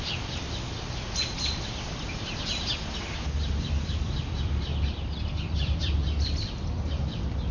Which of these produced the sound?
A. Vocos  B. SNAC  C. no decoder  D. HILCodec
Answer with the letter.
C